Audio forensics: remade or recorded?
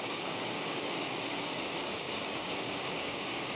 remade